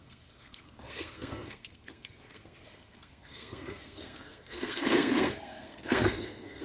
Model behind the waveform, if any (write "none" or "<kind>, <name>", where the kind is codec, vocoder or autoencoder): codec, SNAC